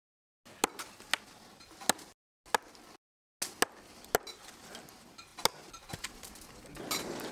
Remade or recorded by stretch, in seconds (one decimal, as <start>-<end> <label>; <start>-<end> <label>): 0.0-7.3 recorded